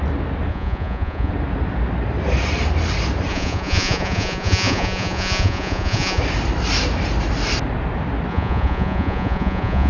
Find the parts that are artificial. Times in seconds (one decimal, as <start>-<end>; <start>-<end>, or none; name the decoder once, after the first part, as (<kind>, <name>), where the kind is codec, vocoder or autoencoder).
0.5-1.3 (vocoder, Vocos); 3.3-6.2; 8.3-9.9